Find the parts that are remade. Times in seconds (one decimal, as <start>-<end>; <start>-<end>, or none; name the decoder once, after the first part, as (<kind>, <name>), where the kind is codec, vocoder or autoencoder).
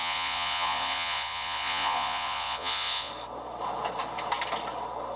0.0-3.1 (vocoder, Vocos)